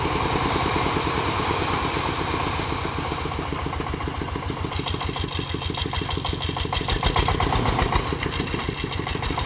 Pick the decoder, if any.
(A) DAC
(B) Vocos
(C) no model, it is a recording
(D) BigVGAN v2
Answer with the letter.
C